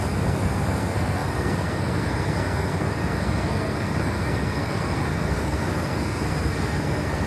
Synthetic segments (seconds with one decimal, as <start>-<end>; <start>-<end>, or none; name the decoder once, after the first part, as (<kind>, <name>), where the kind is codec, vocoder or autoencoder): 0.0-7.3 (codec, SNAC)